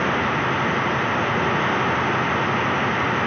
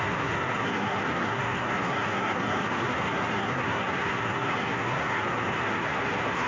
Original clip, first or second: first